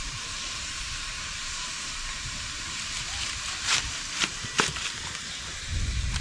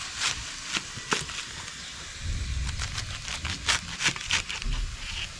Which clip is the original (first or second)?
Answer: second